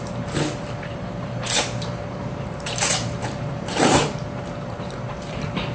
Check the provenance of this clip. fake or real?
fake